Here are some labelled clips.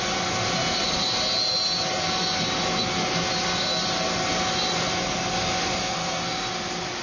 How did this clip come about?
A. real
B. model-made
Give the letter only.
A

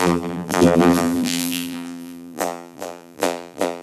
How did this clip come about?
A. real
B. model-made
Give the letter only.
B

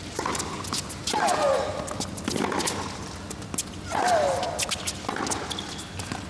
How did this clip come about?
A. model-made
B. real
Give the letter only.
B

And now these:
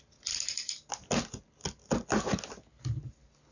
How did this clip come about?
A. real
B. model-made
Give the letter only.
A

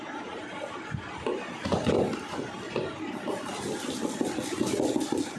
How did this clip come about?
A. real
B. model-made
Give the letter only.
A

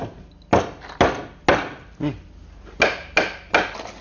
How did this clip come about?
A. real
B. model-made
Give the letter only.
A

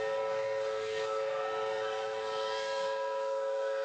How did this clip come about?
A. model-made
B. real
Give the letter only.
A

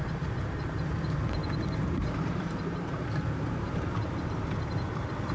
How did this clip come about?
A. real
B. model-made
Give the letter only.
B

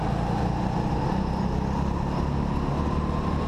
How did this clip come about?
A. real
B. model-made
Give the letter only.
A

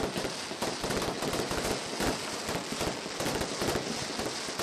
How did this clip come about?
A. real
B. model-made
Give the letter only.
A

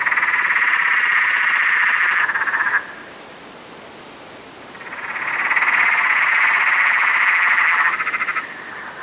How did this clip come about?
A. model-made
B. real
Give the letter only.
A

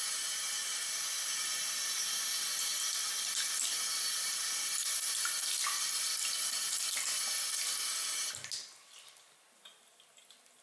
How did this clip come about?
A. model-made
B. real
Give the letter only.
B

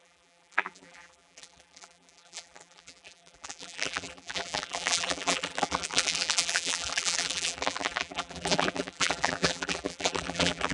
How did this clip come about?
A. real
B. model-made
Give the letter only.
B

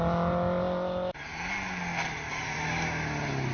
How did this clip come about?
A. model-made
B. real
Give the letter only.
B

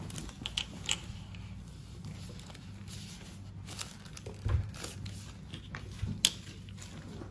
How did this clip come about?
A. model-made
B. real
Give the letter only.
B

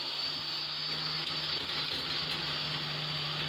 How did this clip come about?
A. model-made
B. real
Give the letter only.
B